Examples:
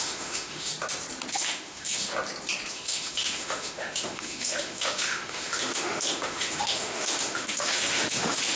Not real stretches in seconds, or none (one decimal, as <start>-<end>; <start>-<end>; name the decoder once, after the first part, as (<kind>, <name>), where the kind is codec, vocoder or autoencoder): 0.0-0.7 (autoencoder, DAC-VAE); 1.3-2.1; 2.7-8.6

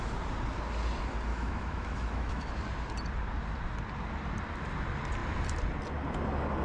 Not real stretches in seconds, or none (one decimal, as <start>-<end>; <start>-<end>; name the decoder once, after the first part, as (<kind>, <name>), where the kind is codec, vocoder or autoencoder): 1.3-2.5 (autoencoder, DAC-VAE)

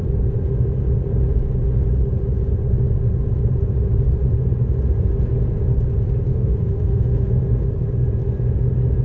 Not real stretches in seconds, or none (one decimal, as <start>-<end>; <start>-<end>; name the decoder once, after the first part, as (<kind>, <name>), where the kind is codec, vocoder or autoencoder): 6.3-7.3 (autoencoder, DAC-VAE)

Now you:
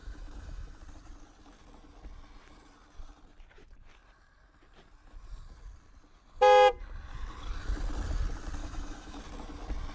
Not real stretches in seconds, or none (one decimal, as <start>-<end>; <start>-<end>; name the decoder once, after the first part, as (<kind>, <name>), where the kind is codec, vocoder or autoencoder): 0.0-0.8 (autoencoder, DAC-VAE); 8.6-9.2

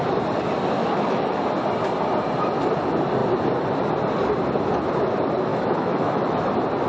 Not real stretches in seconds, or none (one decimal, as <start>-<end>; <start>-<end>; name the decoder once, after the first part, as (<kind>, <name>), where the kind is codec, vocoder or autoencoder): 0.8-1.4 (autoencoder, DAC-VAE); 5.5-6.5

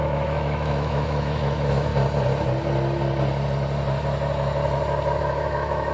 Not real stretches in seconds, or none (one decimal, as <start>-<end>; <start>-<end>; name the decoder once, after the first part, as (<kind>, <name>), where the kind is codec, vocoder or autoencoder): 0.0-1.9 (autoencoder, DAC-VAE); 5.2-5.9